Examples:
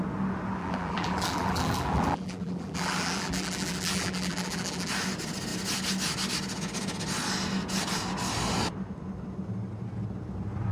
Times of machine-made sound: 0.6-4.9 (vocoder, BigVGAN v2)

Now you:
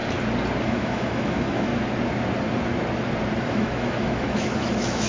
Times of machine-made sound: 0.6-1.7 (autoencoder, DAC-VAE); 3.4-5.1

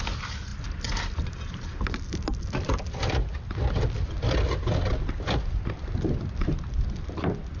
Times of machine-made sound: none

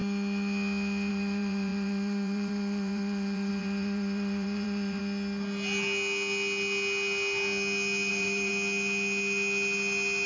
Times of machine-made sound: 1.1-5.0 (vocoder, BigVGAN v2); 8.1-8.5

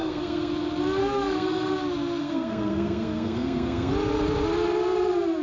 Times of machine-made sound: 0.0-0.5 (codec, SNAC); 1.0-1.7; 2.2-3.9

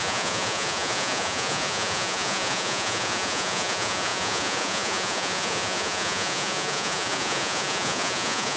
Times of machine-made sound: 0.0-8.6 (vocoder, Vocos)

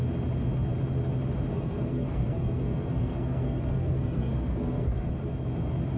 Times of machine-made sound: 1.5-5.1 (codec, SNAC)

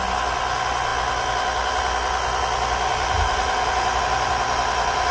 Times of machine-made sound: none